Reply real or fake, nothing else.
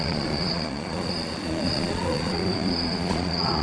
fake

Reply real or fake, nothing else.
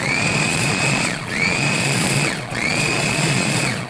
fake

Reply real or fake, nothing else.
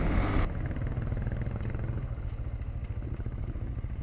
real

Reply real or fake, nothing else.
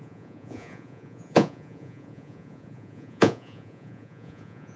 fake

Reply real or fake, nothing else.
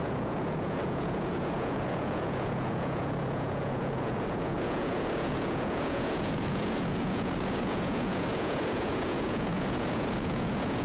fake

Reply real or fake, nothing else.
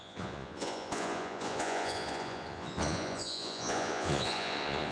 fake